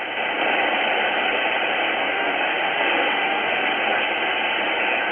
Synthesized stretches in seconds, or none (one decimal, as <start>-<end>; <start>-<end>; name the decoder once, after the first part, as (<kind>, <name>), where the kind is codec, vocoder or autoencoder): 2.0-3.7 (autoencoder, DAC-VAE)